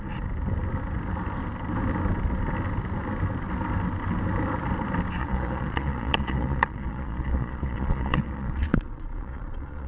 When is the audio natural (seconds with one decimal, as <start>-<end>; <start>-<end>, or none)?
0.0-5.2